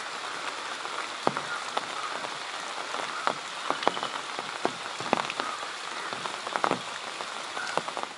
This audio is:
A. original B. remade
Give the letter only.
A